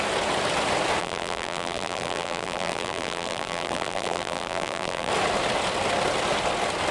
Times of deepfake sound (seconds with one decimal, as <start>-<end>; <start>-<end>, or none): 1.0-5.1